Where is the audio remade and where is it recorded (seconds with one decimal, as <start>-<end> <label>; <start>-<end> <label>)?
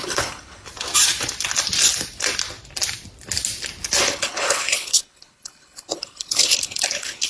0.0-0.7 remade; 0.7-4.0 recorded; 4.0-7.3 remade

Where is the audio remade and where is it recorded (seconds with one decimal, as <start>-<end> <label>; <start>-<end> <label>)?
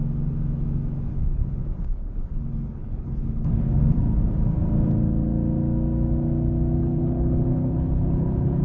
0.0-1.1 recorded; 1.1-3.8 remade; 3.8-6.8 recorded; 6.8-8.6 remade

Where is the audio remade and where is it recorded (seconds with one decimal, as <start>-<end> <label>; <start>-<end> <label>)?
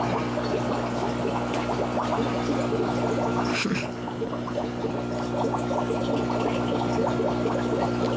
0.0-3.5 recorded; 3.5-4.9 remade; 4.9-8.2 recorded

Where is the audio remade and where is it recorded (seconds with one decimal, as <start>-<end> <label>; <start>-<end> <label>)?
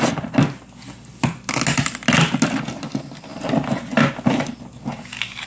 0.0-5.5 recorded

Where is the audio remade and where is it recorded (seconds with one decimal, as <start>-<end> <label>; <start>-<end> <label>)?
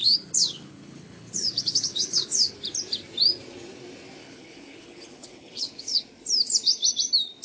0.0-2.5 remade; 2.5-4.2 recorded; 4.2-6.0 remade; 6.0-7.4 recorded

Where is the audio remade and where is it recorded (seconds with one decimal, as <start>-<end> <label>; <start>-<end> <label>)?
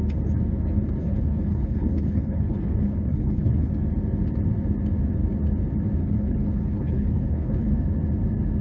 0.0-1.0 recorded; 1.0-3.7 remade; 3.7-6.0 recorded; 6.0-7.7 remade; 7.7-8.6 recorded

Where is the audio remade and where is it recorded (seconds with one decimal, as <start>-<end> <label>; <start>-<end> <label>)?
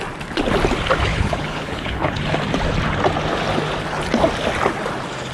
0.0-1.1 recorded; 1.1-2.2 remade; 2.2-5.3 recorded